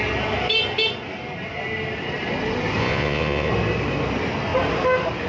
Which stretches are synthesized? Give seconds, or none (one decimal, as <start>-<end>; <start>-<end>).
2.8-3.5